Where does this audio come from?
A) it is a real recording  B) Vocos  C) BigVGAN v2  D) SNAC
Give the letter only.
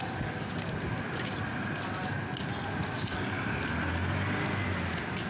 A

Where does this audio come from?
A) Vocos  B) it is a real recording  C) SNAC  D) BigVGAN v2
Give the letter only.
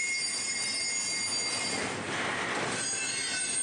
B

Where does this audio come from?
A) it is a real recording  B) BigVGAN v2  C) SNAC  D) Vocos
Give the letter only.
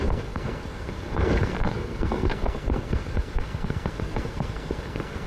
C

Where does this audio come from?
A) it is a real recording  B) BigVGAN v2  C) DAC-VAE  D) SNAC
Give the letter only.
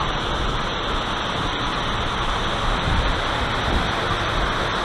A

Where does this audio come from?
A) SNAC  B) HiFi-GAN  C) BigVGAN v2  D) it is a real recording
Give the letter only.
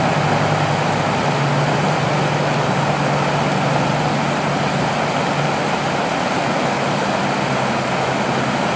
D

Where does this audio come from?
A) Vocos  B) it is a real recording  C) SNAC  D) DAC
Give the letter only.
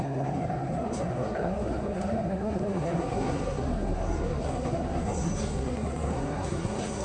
C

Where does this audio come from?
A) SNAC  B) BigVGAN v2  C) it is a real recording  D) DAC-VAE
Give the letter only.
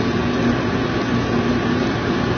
C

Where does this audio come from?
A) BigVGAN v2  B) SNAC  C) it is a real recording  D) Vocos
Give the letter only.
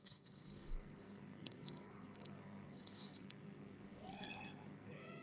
B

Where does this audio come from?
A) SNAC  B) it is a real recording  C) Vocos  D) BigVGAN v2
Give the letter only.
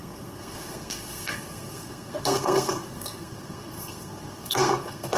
A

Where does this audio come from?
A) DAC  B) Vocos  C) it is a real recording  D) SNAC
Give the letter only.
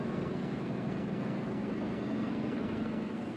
D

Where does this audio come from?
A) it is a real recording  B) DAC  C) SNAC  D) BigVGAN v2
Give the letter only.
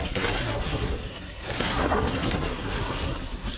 C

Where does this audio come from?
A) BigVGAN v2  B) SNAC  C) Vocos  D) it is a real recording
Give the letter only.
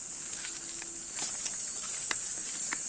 D